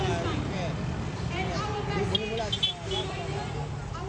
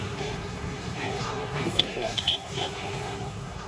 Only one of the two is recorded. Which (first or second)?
first